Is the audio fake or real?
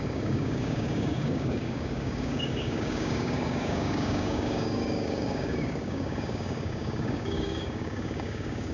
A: fake